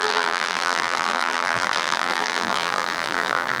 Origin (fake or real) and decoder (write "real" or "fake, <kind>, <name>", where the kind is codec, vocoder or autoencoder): fake, vocoder, BigVGAN v2